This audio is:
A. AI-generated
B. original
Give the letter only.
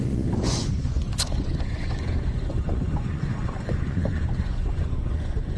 A